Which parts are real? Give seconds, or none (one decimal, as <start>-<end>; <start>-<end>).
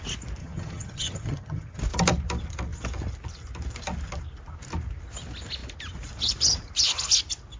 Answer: 0.0-0.4; 1.8-7.6